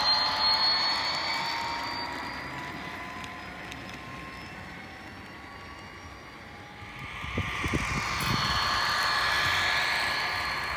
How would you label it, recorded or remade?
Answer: recorded